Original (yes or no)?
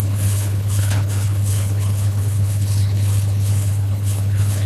no